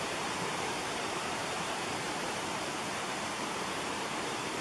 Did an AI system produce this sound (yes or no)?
yes